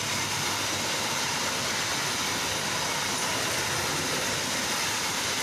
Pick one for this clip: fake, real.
real